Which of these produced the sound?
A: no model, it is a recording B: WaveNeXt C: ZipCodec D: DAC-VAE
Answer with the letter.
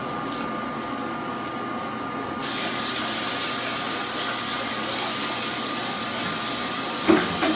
A